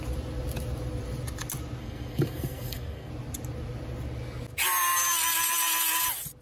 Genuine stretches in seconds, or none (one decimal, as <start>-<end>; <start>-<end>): 0.0-1.8; 3.1-6.4